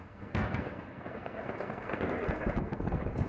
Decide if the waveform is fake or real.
fake